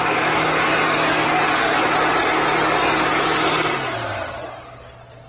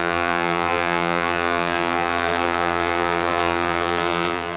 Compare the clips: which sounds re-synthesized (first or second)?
second